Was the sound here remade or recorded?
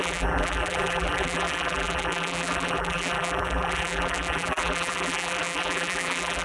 remade